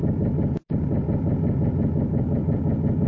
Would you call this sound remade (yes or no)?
yes